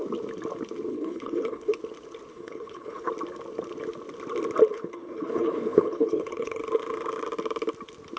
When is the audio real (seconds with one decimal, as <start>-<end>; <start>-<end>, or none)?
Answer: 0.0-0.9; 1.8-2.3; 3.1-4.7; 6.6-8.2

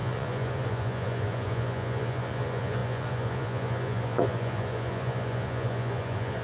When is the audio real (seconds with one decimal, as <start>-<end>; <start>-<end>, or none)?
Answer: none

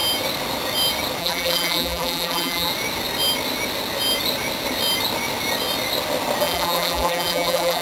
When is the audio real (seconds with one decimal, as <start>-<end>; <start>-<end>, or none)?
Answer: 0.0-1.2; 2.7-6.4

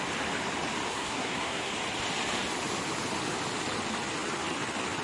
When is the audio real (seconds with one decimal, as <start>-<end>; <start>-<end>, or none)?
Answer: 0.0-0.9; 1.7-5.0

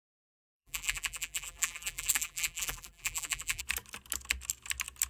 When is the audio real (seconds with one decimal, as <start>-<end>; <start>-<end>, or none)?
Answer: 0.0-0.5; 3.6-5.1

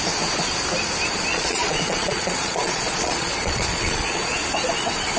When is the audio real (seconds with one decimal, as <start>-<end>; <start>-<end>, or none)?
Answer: 0.0-1.3; 4.4-5.2

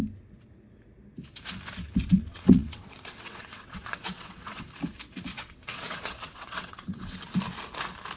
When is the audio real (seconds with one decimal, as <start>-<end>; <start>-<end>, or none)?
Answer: 0.0-2.2; 4.7-5.3; 7.2-8.2